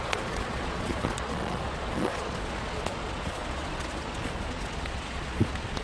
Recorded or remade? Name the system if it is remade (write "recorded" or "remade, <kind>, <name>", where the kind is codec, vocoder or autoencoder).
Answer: remade, vocoder, Vocos